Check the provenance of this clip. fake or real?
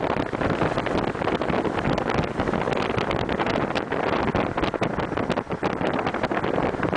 real